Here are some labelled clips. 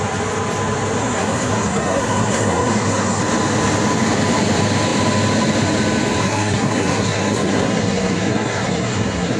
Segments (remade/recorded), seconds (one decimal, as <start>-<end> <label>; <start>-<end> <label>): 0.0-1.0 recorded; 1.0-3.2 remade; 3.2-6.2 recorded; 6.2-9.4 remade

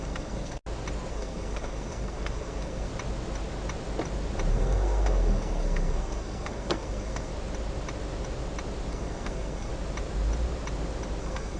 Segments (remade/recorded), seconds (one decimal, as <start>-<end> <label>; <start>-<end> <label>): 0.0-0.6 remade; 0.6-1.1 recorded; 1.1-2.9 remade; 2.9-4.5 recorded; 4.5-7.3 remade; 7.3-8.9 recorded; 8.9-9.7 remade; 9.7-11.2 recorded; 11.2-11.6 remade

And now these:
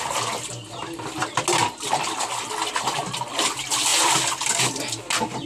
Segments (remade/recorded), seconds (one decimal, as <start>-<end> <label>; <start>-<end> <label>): 0.0-5.5 recorded

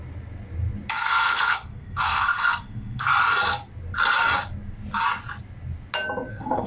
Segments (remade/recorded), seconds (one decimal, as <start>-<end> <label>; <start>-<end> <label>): 0.0-0.9 recorded; 0.9-3.1 remade; 3.1-6.3 recorded; 6.3-6.7 remade

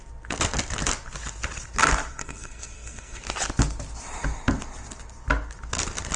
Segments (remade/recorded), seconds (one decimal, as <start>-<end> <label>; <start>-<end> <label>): 0.0-2.1 recorded; 2.1-3.2 remade; 3.2-6.2 recorded

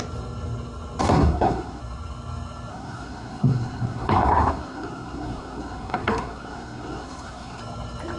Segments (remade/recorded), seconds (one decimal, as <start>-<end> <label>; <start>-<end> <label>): 0.0-1.0 recorded; 1.0-1.8 remade; 1.8-2.7 recorded; 2.7-7.6 remade; 7.6-8.2 recorded

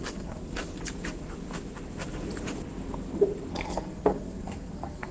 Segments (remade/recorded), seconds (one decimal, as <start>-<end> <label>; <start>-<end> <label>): 0.0-0.4 remade; 0.4-3.5 recorded; 3.5-5.1 remade

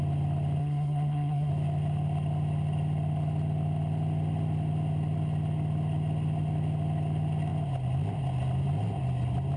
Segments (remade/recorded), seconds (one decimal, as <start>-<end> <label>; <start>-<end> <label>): 0.0-0.6 recorded; 0.6-1.5 remade; 1.5-9.6 recorded